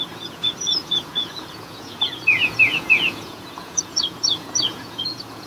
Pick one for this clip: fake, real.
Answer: fake